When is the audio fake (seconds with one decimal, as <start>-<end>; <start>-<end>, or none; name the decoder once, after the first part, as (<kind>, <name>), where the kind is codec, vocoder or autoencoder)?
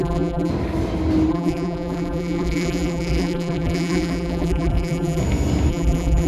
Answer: 0.0-0.5 (vocoder, BigVGAN v2); 1.3-5.2; 5.7-6.3